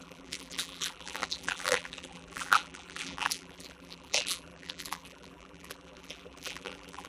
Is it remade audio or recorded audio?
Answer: remade